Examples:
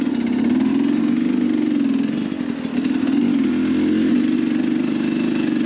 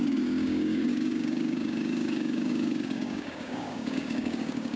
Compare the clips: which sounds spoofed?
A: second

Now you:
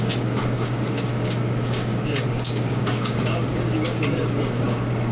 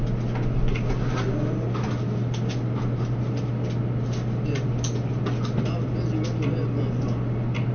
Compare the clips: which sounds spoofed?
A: first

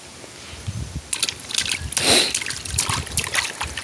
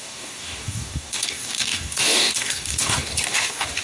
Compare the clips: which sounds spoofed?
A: second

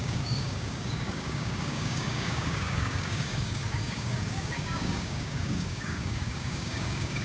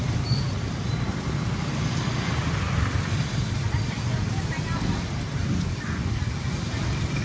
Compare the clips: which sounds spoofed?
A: first